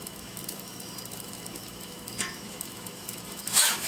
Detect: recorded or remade remade